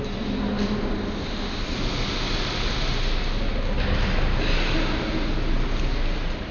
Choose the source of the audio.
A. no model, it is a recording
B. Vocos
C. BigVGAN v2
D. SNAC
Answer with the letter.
A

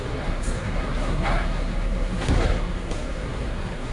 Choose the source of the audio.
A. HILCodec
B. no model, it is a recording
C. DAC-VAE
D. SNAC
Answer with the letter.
D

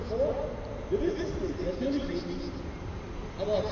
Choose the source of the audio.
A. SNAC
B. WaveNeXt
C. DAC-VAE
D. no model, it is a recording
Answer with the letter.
D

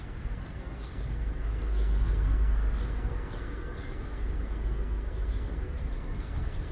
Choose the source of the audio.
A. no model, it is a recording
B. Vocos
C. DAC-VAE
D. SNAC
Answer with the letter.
D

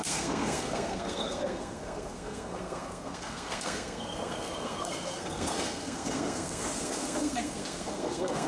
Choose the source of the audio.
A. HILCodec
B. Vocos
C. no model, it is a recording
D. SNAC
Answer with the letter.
D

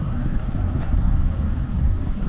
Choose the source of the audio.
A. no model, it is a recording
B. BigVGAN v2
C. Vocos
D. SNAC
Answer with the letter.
D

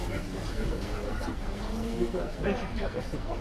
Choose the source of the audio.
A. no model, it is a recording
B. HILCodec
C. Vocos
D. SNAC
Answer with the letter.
D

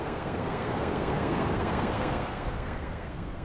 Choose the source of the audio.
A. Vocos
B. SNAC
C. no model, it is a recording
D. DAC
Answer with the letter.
B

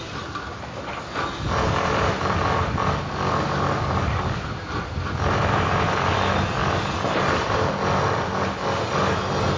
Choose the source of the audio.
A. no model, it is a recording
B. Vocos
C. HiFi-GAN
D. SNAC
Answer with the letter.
A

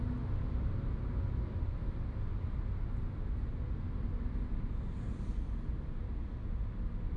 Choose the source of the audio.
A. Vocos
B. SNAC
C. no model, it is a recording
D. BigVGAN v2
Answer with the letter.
C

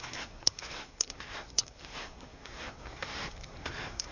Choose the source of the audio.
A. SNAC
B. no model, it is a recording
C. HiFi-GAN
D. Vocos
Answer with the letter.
A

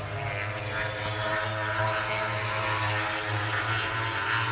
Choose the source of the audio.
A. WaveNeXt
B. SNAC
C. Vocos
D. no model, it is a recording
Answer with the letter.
D